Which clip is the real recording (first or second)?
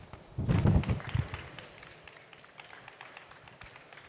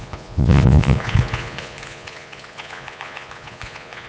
first